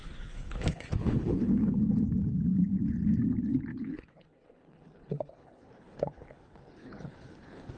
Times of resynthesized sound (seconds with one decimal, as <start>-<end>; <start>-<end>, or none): 0.0-1.8; 3.7-7.8